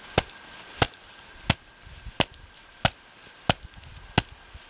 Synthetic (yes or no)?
no